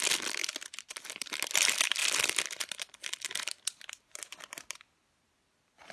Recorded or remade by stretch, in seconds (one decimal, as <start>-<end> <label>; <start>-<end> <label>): 0.0-5.9 recorded